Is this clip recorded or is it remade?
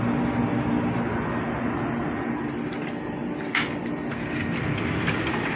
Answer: recorded